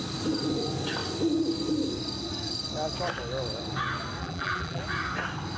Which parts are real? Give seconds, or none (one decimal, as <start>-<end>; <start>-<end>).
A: 0.0-4.2; 4.8-5.6